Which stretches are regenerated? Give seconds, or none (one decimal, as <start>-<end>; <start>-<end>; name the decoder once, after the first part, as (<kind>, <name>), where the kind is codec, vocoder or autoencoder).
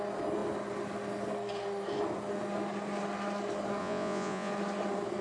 3.8-4.5 (vocoder, Vocos)